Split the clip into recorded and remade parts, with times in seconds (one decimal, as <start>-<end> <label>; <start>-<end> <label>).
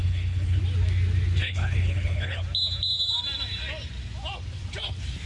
0.0-0.6 remade; 0.6-1.4 recorded; 1.4-2.4 remade; 2.4-5.3 recorded